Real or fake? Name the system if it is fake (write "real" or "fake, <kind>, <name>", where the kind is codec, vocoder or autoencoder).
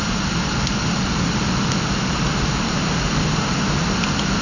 real